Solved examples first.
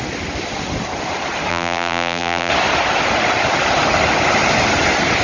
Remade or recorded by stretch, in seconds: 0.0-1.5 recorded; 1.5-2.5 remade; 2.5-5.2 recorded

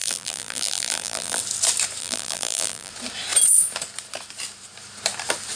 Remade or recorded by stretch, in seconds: 0.0-1.4 remade; 1.4-2.0 recorded; 2.0-2.9 remade; 2.9-5.6 recorded

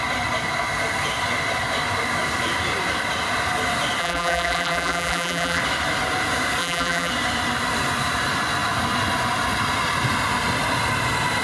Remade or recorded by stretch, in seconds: 0.0-4.0 recorded; 4.0-5.6 remade; 5.6-6.6 recorded; 6.6-7.1 remade; 7.1-11.4 recorded

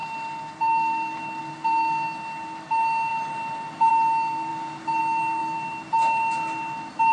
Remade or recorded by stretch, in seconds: 0.0-1.4 remade; 1.4-3.1 recorded; 3.1-3.9 remade; 3.9-4.5 recorded; 4.5-5.0 remade; 5.0-5.4 recorded; 5.4-7.1 remade

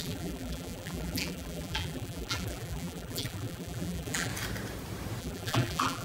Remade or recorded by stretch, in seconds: 0.0-4.3 remade; 4.3-5.2 recorded; 5.2-6.0 remade

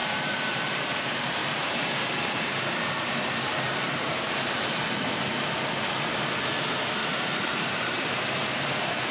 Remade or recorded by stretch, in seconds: 0.0-0.6 remade; 0.6-1.4 recorded; 1.4-4.8 remade; 4.8-7.0 recorded; 7.0-8.2 remade; 8.2-9.1 recorded

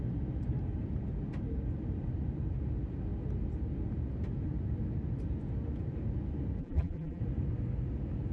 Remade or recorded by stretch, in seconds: 0.0-6.6 recorded; 6.6-7.2 remade; 7.2-8.3 recorded